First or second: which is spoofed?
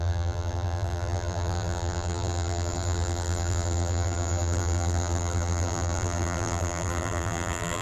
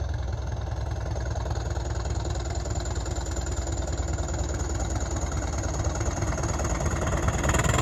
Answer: first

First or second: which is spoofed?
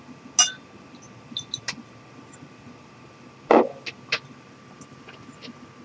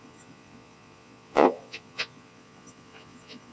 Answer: second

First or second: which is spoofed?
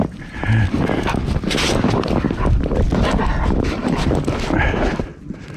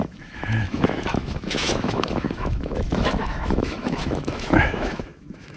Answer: second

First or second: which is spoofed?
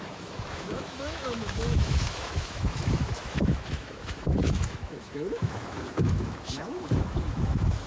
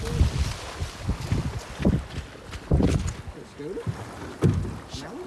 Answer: first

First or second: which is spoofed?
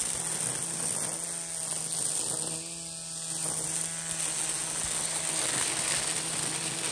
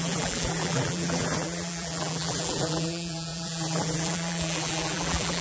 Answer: second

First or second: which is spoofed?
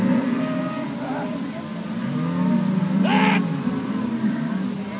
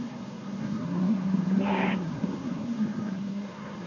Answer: second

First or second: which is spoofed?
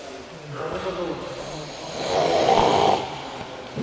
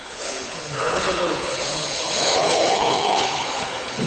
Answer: second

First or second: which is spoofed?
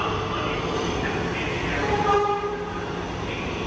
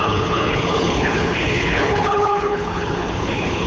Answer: second